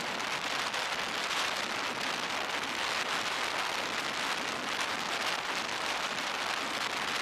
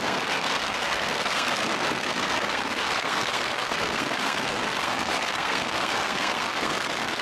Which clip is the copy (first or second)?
second